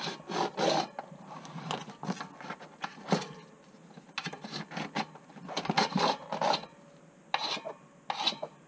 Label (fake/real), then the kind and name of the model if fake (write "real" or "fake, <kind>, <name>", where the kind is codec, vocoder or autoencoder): real